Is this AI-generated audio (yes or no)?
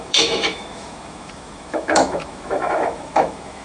yes